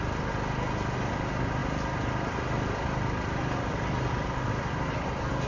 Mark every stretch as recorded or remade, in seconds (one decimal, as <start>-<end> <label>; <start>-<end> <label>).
0.0-5.5 recorded